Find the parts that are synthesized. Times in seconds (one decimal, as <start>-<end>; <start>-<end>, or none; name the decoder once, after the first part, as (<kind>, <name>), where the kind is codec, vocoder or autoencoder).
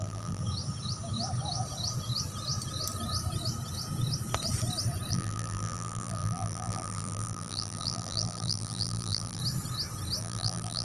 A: 0.0-0.4 (vocoder, BigVGAN v2); 5.1-9.4; 10.2-10.8